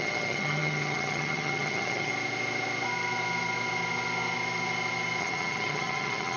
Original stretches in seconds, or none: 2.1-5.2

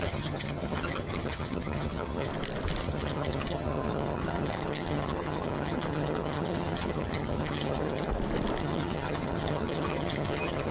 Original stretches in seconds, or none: 2.3-2.8; 8.1-8.6

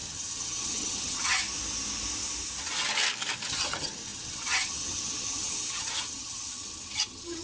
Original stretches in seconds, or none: 1.4-3.5